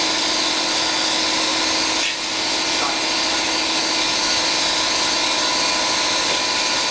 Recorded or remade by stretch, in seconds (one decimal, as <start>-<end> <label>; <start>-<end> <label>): 0.0-6.9 recorded